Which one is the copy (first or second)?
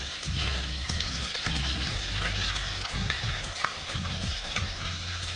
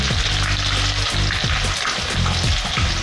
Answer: first